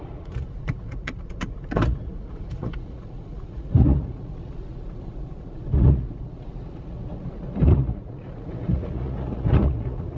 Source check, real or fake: fake